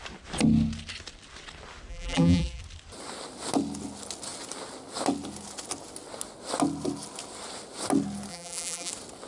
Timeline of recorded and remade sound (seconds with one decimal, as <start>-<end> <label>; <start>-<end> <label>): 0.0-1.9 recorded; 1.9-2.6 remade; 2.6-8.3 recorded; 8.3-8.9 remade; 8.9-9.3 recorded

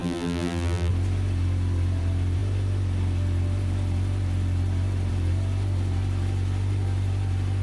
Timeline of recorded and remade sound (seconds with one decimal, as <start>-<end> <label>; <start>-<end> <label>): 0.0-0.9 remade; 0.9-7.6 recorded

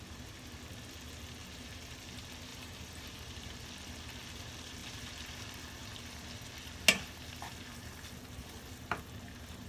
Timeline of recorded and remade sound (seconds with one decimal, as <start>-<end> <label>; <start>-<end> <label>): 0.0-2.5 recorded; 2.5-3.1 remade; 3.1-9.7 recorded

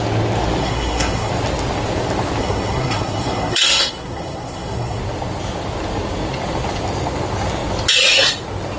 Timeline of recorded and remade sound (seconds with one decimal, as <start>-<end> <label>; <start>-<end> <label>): 0.0-0.6 recorded; 0.6-1.3 remade; 1.3-2.4 recorded; 2.4-5.0 remade; 5.0-8.8 recorded

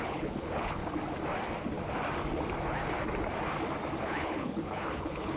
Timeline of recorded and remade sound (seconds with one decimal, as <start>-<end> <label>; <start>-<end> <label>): 0.0-0.8 remade; 0.8-4.0 recorded; 4.0-5.4 remade

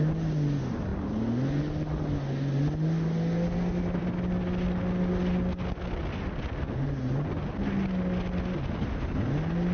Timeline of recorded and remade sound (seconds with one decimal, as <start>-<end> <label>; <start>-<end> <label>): 0.0-9.7 recorded